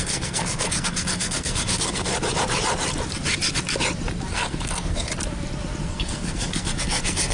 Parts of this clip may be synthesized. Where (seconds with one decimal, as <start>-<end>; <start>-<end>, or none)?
0.0-2.1; 4.3-5.1; 5.8-7.3